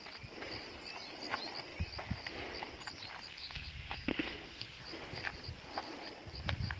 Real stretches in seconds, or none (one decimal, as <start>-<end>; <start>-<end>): 0.0-3.3; 4.8-6.8